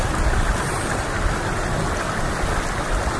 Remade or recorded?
recorded